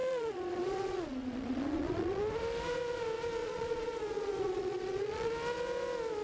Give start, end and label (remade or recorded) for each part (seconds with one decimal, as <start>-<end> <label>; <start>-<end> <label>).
0.0-2.2 remade; 2.2-3.4 recorded; 3.4-5.3 remade; 5.3-6.2 recorded

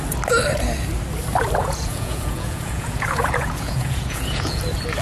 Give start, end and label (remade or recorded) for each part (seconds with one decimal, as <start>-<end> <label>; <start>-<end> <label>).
0.0-1.6 recorded; 1.6-4.6 remade; 4.6-5.0 recorded

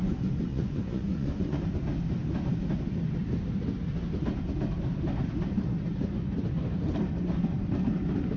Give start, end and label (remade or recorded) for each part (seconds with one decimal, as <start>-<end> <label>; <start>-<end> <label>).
0.0-1.6 remade; 1.6-8.4 recorded

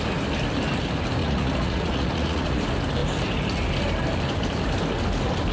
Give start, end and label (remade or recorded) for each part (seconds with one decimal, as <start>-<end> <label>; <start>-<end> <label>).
0.0-1.2 recorded; 1.2-2.6 remade; 2.6-5.5 recorded

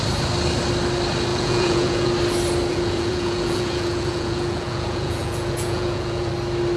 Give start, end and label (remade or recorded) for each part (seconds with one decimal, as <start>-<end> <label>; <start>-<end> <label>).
0.0-1.3 recorded; 1.3-2.1 remade; 2.1-2.7 recorded; 2.7-6.3 remade; 6.3-6.8 recorded

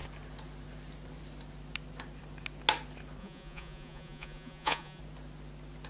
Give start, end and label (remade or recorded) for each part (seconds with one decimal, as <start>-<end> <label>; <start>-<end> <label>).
0.0-3.2 recorded; 3.2-5.0 remade; 5.0-5.9 recorded

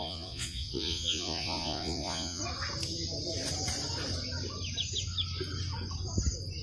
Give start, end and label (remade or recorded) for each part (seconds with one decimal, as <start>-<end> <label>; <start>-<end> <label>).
0.0-2.4 remade; 2.4-6.6 recorded

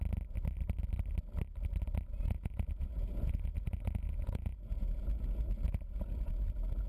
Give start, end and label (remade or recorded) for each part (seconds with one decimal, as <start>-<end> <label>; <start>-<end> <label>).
0.0-2.2 recorded; 2.2-6.3 remade; 6.3-6.9 recorded